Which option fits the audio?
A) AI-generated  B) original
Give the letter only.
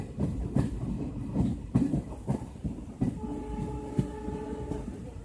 B